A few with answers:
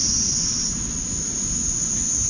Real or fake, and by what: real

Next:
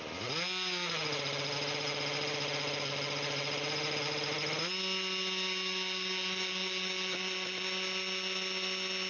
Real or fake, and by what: real